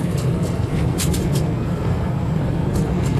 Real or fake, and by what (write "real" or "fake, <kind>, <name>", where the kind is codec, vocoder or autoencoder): fake, codec, SNAC